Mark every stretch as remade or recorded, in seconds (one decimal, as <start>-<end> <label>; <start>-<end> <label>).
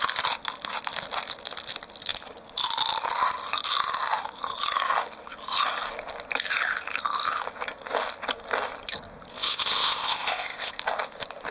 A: 0.0-9.3 recorded; 9.3-10.7 remade; 10.7-11.5 recorded